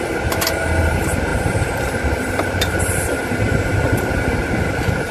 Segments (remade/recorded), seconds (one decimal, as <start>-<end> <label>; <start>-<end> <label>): 0.0-1.3 recorded; 1.3-2.8 remade; 2.8-5.1 recorded